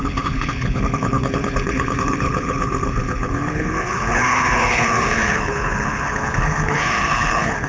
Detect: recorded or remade remade